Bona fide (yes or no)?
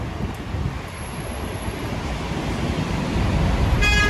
yes